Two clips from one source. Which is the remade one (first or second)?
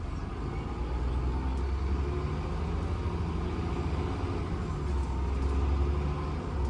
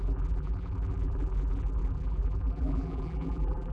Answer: second